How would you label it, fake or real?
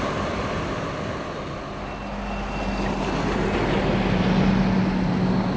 real